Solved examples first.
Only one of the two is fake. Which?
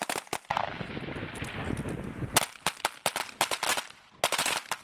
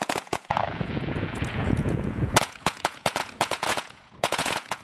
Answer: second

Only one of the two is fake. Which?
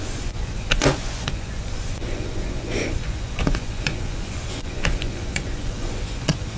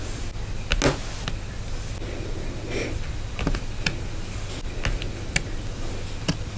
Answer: first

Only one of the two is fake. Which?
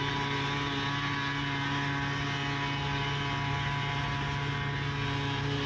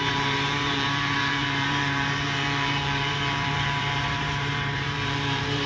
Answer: second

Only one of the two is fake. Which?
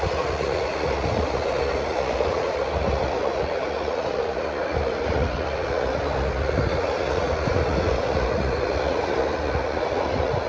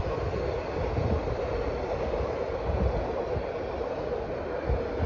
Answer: first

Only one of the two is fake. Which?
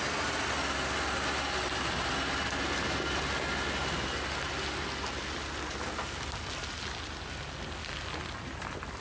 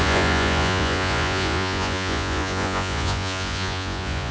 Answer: second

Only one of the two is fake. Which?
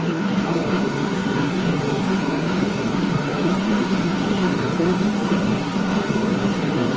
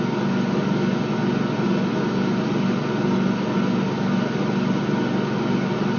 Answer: first